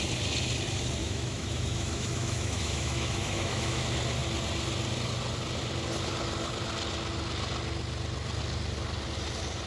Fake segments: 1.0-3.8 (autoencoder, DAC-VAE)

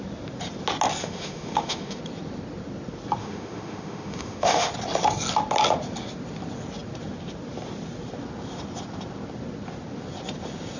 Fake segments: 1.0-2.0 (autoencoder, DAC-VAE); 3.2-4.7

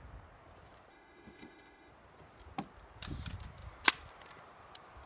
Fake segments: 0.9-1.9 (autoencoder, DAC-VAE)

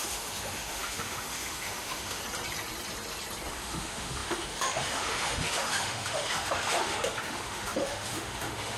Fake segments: 0.0-2.2 (autoencoder, DAC-VAE); 3.5-8.8